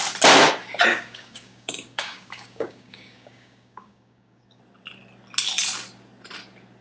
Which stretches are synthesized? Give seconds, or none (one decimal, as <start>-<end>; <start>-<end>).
0.9-4.6